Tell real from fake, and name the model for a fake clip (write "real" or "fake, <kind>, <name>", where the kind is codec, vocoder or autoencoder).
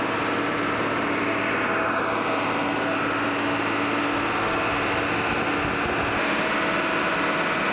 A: real